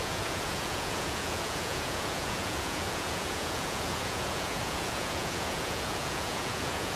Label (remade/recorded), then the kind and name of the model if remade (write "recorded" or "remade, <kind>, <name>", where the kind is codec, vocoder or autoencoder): remade, vocoder, Vocos